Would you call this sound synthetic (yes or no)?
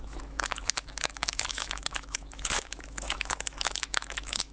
yes